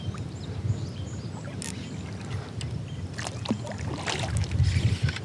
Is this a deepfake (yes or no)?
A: no